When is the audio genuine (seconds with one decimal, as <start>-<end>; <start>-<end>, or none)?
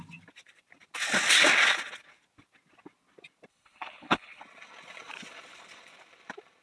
0.0-3.5; 4.4-6.6